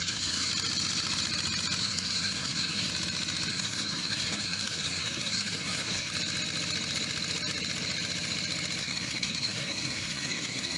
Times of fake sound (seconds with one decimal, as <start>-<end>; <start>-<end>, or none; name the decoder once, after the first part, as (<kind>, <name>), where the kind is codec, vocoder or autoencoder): 0.0-0.5 (codec, SNAC); 1.8-2.9; 3.5-6.1; 8.8-10.8